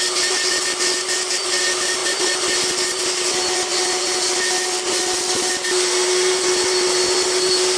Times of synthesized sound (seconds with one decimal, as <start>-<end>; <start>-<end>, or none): none